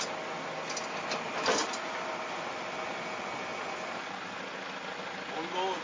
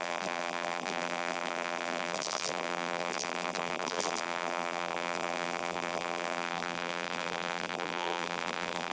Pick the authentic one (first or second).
first